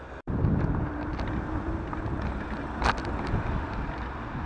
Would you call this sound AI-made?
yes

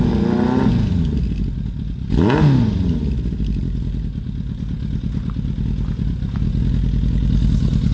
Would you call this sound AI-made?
no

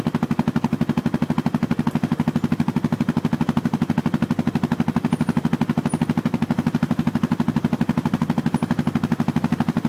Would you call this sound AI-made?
no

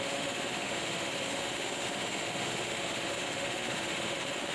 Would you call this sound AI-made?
yes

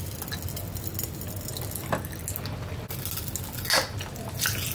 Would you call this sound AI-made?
no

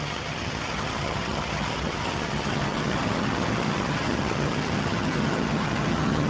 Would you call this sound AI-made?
yes